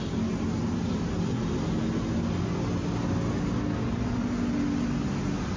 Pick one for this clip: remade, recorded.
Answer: recorded